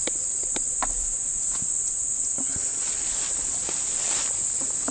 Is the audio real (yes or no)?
yes